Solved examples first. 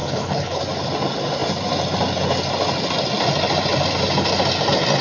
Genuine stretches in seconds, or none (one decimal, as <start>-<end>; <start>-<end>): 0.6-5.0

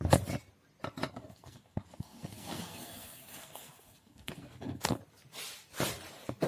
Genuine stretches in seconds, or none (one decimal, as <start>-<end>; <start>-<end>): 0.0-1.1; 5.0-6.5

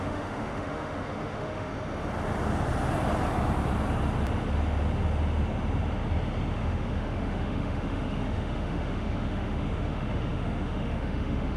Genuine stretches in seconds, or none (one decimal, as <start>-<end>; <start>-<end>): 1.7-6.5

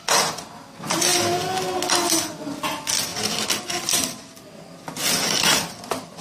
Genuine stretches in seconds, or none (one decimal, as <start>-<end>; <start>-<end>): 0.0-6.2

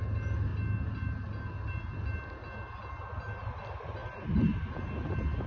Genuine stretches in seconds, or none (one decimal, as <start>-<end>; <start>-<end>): 0.0-4.0; 4.6-5.5